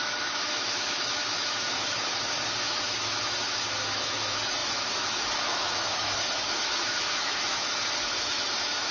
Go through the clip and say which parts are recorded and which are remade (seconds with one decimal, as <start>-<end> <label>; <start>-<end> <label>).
0.0-8.9 remade